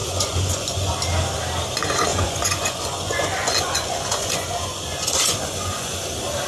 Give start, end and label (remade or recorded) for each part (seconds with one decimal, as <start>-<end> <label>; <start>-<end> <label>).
0.0-0.9 remade; 0.9-2.1 recorded; 2.1-6.0 remade; 6.0-6.5 recorded